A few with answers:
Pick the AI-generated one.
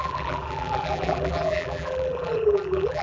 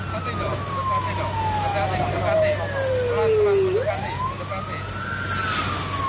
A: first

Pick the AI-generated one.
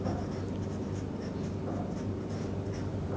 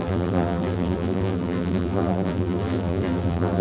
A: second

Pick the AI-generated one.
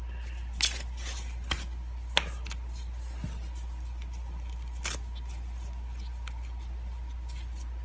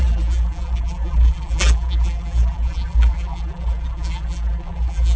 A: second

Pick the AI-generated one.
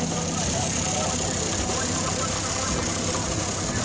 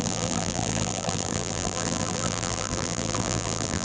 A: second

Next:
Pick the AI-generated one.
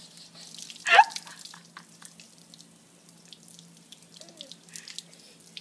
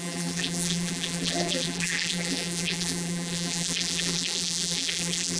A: second